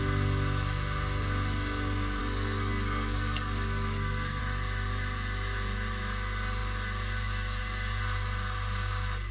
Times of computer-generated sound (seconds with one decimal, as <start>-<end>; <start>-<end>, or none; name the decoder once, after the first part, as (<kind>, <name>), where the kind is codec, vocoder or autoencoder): 2.2-4.4 (codec, SNAC)